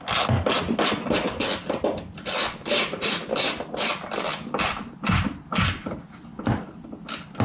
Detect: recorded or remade recorded